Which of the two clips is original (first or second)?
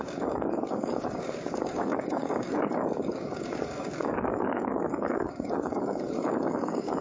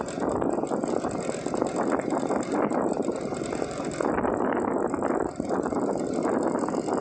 second